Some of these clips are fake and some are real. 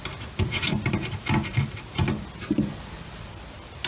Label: real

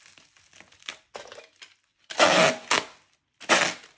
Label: real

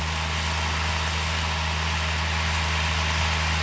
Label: real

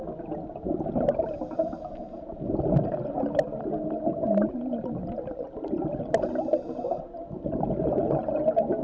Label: real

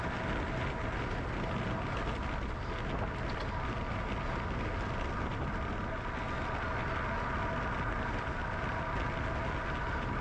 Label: real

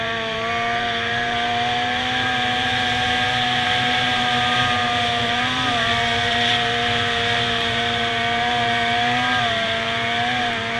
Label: fake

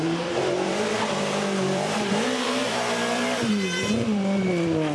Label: fake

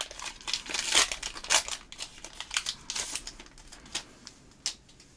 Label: real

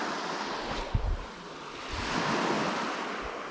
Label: real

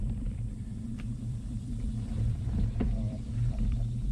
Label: fake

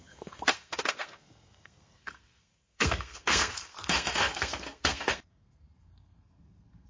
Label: fake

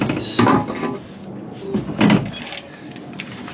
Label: real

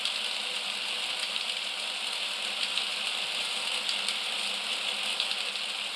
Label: real